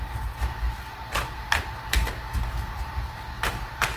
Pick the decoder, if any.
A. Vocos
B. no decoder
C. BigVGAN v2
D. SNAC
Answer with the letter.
C